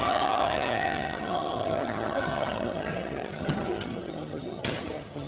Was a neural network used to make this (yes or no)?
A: yes